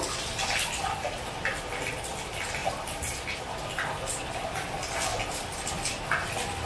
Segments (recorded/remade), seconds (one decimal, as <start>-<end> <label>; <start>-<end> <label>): 0.0-6.7 recorded